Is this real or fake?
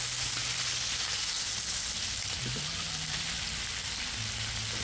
real